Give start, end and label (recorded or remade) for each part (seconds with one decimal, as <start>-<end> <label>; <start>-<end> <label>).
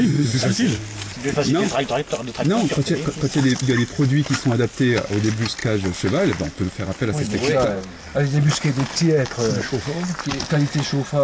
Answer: 0.0-11.2 recorded